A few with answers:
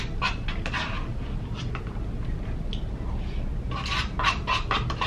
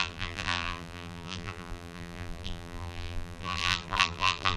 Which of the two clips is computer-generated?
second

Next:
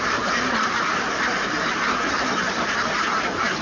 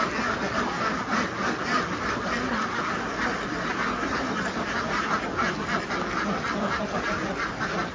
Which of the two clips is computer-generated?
first